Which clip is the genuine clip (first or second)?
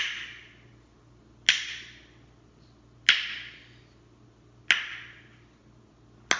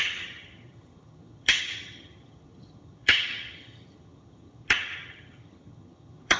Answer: first